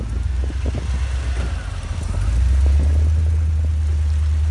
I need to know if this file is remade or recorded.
recorded